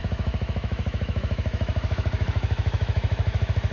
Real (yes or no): no